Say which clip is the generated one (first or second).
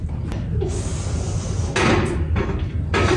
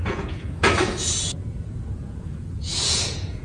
second